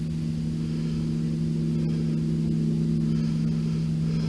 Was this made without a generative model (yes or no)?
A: yes